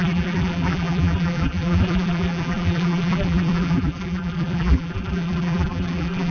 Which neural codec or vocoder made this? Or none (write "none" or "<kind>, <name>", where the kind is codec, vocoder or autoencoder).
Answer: vocoder, BigVGAN v2